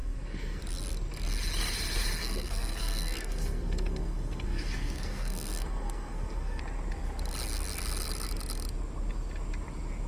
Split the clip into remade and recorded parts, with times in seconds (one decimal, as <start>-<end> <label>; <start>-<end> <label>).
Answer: 0.0-0.6 remade; 0.6-2.2 recorded; 2.2-6.6 remade; 6.6-10.1 recorded